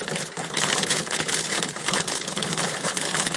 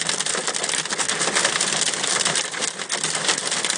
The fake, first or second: first